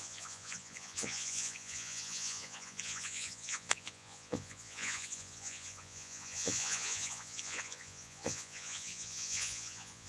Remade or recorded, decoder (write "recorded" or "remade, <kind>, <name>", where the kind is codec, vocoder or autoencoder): remade, vocoder, Vocos